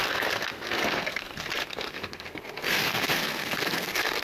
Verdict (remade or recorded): remade